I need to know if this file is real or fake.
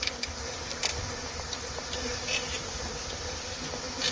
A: real